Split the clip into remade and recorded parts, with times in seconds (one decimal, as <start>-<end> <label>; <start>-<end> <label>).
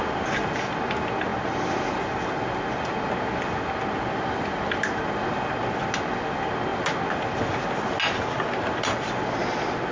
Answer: 0.0-9.9 recorded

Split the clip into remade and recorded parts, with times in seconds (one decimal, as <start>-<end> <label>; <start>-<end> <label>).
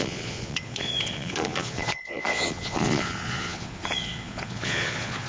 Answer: 0.0-5.3 remade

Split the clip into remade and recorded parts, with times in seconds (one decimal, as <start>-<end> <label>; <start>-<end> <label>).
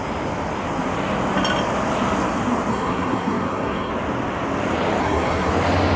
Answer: 0.0-2.7 recorded; 2.7-3.9 remade; 3.9-5.0 recorded; 5.0-5.5 remade; 5.5-6.0 recorded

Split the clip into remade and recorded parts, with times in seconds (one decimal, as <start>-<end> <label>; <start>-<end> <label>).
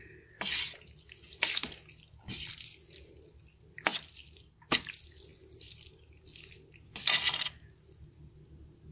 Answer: 0.0-8.9 recorded